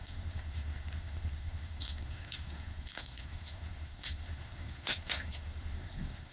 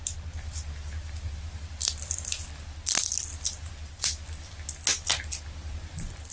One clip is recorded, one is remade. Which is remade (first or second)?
first